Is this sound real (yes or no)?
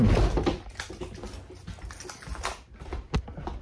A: yes